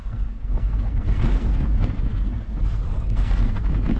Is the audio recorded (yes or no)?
no